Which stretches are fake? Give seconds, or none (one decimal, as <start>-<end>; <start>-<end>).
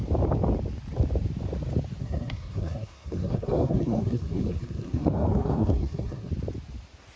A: 2.0-6.3